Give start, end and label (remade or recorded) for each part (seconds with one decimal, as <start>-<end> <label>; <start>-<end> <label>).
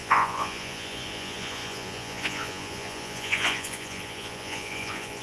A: 0.0-5.2 remade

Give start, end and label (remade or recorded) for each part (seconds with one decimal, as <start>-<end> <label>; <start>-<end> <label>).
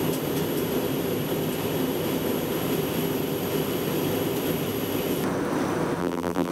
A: 0.0-6.0 recorded; 6.0-6.5 remade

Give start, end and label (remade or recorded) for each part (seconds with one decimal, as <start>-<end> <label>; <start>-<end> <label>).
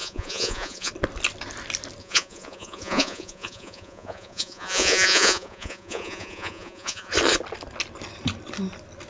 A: 0.0-0.9 remade; 0.9-2.0 recorded; 2.0-7.1 remade; 7.1-9.1 recorded